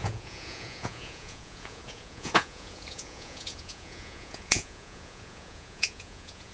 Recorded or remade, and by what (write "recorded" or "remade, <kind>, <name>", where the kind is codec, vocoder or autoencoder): remade, vocoder, Vocos